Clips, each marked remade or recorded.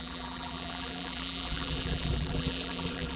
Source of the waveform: remade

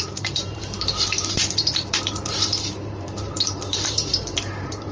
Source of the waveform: remade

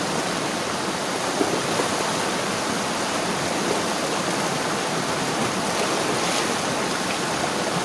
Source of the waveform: recorded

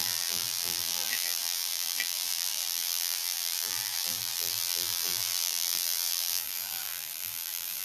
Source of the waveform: remade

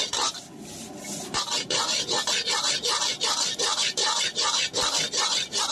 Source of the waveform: remade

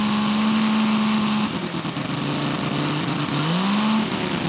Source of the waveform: recorded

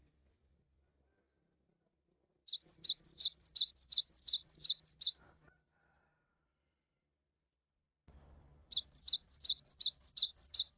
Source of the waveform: remade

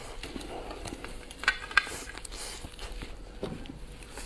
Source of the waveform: recorded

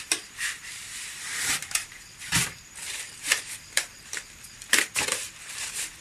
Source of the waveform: remade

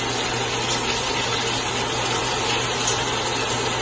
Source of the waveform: recorded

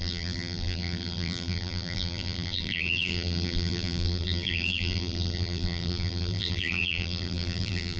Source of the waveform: remade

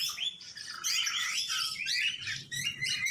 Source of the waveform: recorded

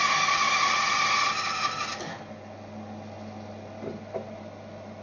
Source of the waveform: recorded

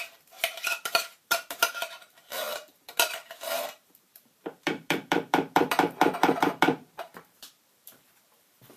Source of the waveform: remade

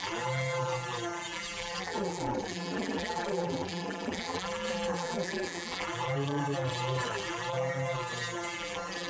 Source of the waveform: remade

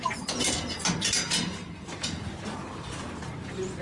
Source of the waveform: recorded